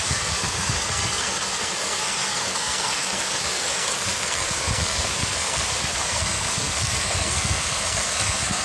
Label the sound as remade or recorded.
remade